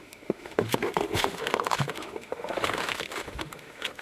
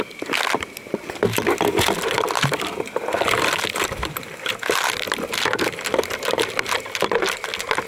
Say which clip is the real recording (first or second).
second